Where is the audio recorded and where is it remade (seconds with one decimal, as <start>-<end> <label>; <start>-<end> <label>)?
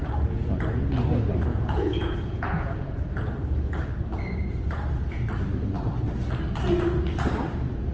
0.0-1.5 recorded; 1.5-3.1 remade; 3.1-7.9 recorded